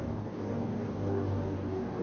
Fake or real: fake